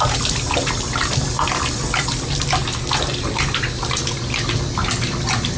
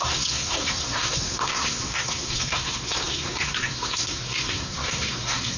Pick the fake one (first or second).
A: second